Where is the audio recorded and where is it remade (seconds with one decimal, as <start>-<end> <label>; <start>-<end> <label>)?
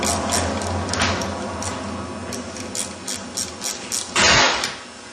0.0-5.1 recorded